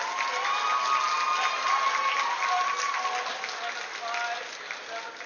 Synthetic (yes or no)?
no